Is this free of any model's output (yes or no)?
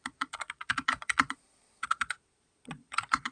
no